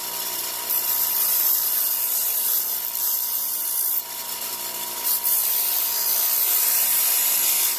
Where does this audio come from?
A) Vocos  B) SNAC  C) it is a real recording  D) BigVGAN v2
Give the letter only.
D